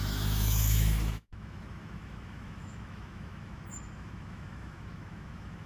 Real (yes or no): no